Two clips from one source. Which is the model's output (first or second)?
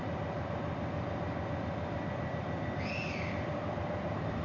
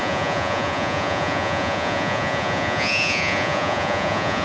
second